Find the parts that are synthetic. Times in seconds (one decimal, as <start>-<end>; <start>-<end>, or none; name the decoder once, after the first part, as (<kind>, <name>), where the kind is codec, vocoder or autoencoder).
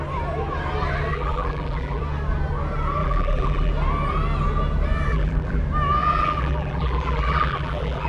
1.1-2.0 (vocoder, BigVGAN v2); 3.0-3.7; 5.1-5.6; 6.0-8.1